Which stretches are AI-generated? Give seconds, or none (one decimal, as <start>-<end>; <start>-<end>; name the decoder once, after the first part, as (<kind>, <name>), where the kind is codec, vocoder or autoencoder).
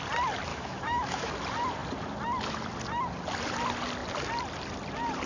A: 0.5-1.3 (autoencoder, DAC-VAE)